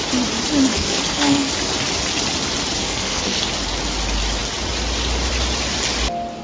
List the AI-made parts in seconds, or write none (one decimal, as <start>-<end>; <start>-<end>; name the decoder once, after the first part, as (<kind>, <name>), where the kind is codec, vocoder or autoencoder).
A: 0.7-1.5 (codec, SNAC); 2.8-3.4

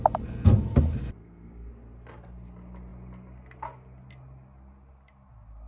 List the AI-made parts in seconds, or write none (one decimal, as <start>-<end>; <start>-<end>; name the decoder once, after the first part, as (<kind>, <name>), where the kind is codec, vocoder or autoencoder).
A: 1.2-1.7 (codec, SNAC)

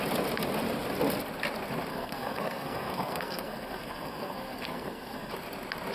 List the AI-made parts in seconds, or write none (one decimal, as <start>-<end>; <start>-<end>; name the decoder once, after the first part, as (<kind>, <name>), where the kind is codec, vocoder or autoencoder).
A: 1.9-5.3 (codec, SNAC)

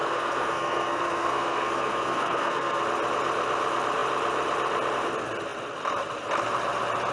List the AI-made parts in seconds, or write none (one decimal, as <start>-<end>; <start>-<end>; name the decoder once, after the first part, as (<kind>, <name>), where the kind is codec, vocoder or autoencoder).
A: 0.0-2.8 (codec, SNAC)

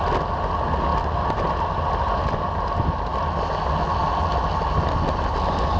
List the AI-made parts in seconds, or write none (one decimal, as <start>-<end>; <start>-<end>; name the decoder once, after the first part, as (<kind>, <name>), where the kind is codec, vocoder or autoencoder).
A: none